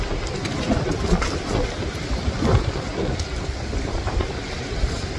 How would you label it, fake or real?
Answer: real